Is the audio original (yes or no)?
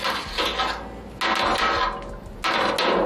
yes